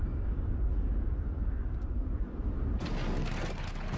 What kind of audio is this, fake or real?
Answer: real